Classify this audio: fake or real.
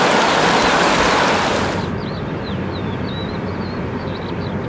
real